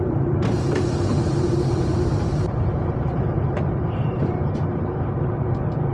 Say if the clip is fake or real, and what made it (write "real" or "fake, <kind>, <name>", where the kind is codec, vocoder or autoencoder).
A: fake, vocoder, BigVGAN v2